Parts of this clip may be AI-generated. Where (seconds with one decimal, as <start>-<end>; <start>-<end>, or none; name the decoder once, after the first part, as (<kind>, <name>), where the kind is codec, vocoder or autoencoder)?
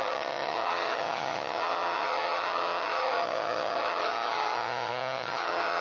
0.0-5.8 (vocoder, HiFi-GAN)